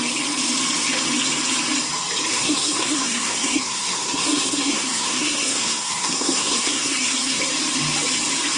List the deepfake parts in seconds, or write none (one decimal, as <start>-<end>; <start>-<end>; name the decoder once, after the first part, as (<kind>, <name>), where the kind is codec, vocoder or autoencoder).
2.3-7.4 (codec, SNAC)